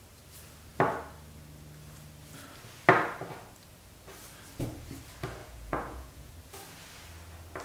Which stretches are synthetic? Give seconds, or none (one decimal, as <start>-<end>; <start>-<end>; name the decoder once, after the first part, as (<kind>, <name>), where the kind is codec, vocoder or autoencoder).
5.4-6.3 (vocoder, Vocos)